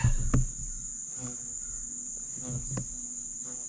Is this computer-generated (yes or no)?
no